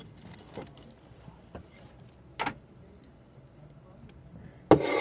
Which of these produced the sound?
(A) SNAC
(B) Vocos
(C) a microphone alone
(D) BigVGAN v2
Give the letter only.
C